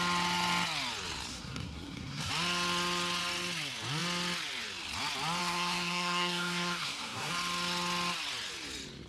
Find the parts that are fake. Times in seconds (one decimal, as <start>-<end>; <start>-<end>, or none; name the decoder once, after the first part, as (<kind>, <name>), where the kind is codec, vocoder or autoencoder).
1.3-2.3 (codec, SNAC); 5.4-7.3